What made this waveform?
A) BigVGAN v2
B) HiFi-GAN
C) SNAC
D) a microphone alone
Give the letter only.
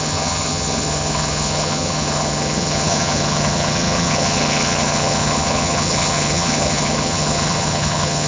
B